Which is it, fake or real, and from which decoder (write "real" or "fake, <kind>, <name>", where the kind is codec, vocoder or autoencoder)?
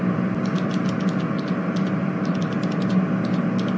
real